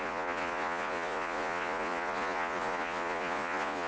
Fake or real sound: fake